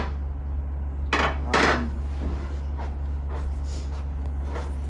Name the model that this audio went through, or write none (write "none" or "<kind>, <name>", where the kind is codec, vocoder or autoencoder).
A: none